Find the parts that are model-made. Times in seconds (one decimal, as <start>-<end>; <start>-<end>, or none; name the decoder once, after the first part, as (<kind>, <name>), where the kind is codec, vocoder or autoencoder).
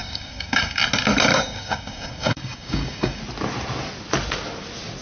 0.0-0.8 (codec, DAC); 1.3-3.2